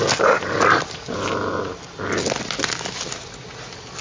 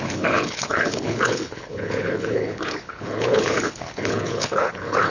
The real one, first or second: first